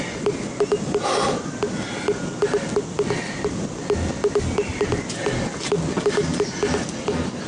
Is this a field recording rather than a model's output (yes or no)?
yes